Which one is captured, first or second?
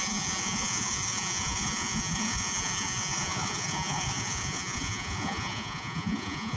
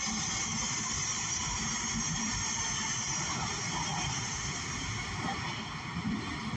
second